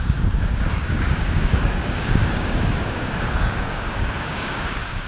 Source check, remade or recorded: remade